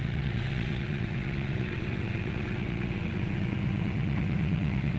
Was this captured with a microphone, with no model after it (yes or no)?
no